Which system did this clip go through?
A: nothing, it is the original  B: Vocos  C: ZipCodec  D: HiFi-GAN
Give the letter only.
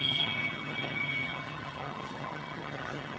D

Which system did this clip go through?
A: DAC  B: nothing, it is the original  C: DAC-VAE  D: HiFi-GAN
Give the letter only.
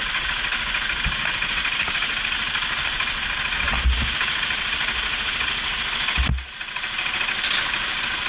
B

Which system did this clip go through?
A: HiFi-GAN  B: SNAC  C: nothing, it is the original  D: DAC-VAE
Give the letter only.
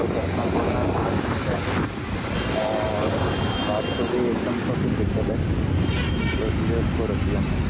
C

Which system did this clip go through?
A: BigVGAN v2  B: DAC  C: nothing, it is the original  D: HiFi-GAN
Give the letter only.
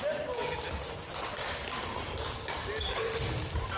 C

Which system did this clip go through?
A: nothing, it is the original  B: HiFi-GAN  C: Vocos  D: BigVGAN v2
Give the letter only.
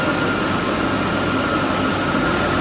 A